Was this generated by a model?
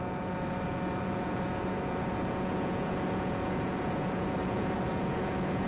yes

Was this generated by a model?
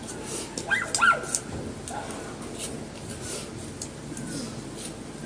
no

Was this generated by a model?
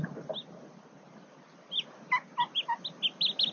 no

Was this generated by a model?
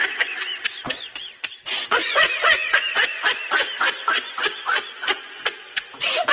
yes